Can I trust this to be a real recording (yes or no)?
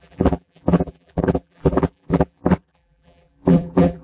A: no